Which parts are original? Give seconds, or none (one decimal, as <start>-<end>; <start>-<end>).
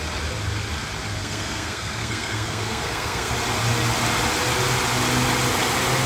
0.0-1.2; 3.3-6.1